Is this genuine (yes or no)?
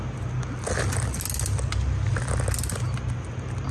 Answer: yes